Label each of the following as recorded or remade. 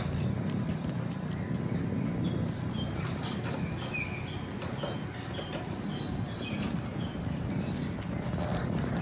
remade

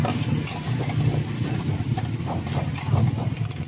recorded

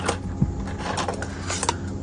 recorded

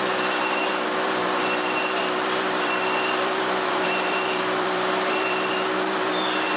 remade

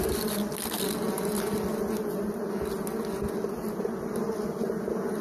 recorded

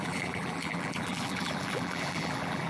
remade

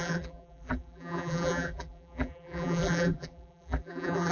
remade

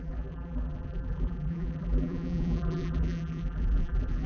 remade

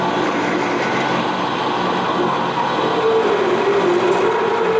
recorded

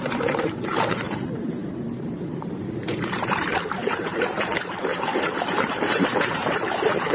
remade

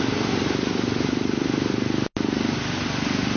recorded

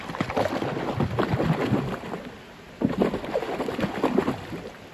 recorded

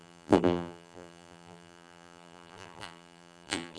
remade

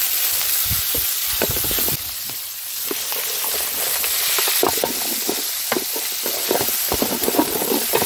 remade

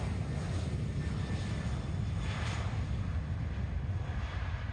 recorded